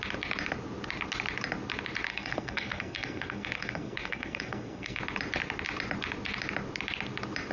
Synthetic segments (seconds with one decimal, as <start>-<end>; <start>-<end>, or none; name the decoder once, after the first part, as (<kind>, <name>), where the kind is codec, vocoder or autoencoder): 2.1-5.0 (codec, SNAC)